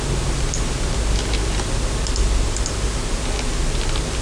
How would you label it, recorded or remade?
recorded